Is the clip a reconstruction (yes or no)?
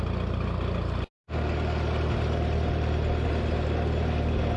no